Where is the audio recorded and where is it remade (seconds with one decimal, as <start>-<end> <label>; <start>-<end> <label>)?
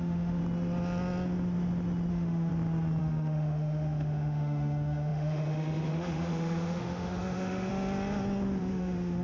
0.0-0.4 remade; 0.4-2.1 recorded; 2.1-2.5 remade; 2.5-3.0 recorded; 3.0-7.7 remade; 7.7-8.6 recorded; 8.6-9.2 remade